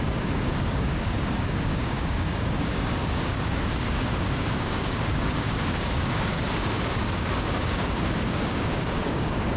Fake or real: fake